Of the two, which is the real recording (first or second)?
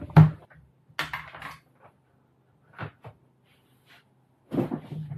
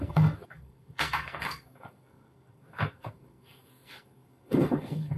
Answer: first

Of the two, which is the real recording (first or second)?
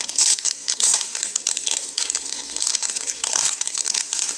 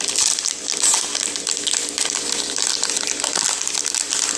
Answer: second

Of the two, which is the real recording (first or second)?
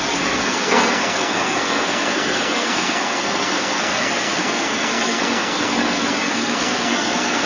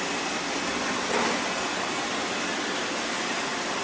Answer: second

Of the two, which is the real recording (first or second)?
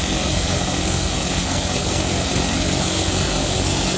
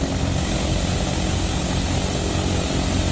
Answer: second